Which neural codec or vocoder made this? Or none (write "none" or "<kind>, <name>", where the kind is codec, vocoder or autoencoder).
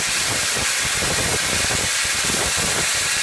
vocoder, BigVGAN v2